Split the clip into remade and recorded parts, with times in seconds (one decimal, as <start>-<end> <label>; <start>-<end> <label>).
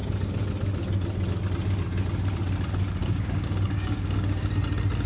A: 0.0-3.0 recorded; 3.0-4.5 remade; 4.5-5.1 recorded